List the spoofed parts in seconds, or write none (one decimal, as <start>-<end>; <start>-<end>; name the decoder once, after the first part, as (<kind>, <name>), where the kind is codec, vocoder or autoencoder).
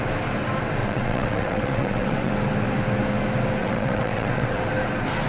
0.8-2.3 (vocoder, WaveNeXt); 3.6-4.6